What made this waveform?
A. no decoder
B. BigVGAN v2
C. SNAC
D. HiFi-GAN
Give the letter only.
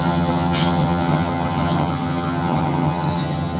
D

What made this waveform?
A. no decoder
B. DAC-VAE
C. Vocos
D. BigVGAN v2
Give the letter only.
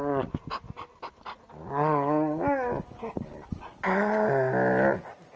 A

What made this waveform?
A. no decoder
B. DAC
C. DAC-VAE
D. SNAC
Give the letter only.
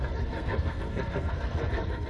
D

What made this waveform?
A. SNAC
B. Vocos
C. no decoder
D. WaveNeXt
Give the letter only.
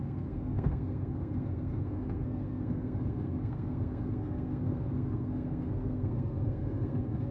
A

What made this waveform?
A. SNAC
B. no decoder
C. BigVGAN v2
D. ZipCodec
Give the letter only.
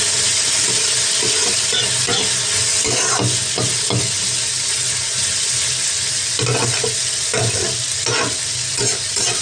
B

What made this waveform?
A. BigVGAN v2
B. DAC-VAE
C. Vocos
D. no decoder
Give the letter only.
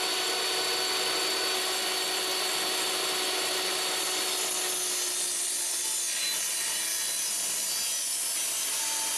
D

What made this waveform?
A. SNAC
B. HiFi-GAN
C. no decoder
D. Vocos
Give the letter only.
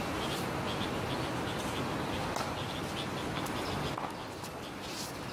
C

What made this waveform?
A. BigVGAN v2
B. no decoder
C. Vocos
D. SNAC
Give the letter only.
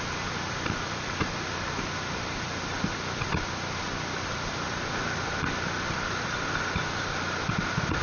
B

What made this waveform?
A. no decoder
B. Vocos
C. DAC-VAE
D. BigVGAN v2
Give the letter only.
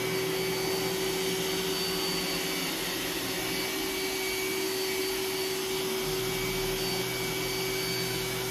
A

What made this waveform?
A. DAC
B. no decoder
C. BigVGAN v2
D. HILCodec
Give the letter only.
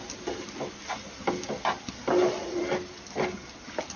B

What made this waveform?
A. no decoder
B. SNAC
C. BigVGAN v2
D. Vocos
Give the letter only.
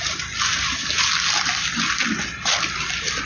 A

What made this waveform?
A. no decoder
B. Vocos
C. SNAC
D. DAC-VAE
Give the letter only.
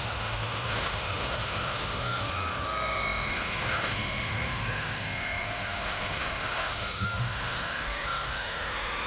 D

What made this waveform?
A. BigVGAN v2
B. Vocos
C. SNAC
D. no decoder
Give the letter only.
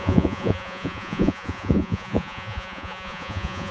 B